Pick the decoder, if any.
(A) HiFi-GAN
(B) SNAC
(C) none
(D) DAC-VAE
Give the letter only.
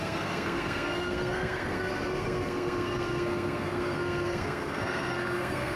B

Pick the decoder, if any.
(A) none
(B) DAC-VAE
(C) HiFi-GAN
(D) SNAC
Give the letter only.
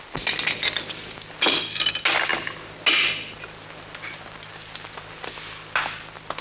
A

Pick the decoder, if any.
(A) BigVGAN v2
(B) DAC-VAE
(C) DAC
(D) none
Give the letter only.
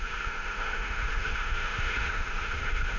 B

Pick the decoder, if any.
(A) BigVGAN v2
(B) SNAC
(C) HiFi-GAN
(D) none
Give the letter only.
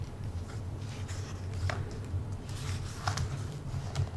A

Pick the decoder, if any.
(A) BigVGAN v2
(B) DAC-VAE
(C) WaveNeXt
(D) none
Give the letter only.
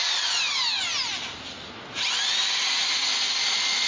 D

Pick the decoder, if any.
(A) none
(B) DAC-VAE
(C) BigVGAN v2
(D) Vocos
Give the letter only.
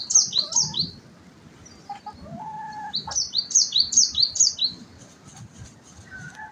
A